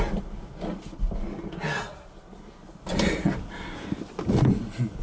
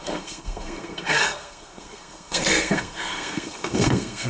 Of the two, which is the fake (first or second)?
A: second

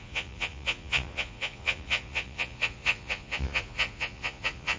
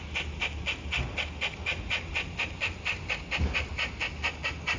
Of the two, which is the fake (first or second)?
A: first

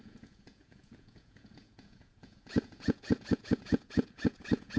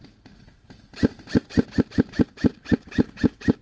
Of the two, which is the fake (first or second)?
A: first